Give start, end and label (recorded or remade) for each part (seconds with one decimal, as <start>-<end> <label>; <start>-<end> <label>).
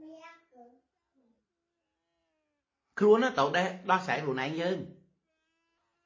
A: 0.0-6.1 recorded